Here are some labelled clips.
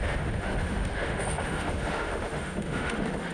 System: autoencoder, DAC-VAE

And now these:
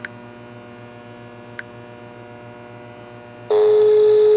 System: none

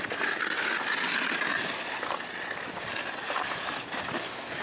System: none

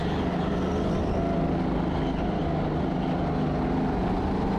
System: none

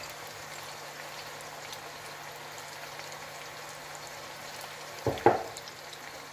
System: none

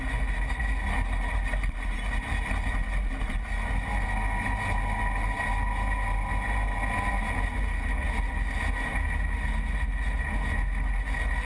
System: none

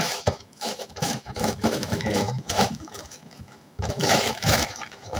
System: autoencoder, DAC-VAE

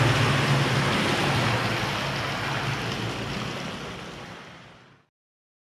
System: none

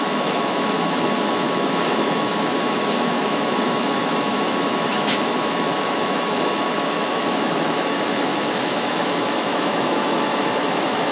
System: autoencoder, DAC-VAE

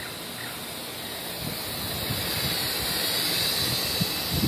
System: none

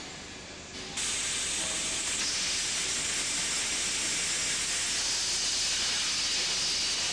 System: none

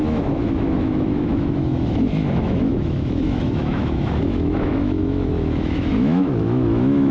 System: autoencoder, DAC-VAE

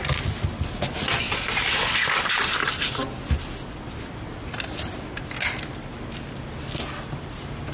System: none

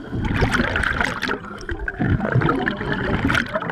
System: none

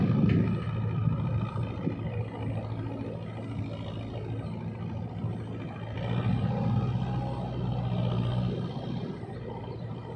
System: none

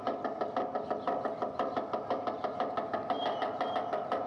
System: none